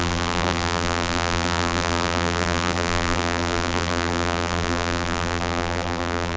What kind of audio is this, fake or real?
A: fake